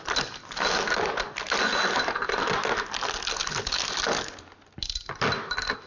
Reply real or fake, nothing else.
real